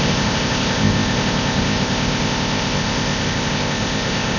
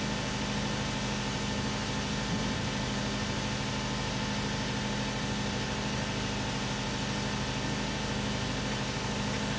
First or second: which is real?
second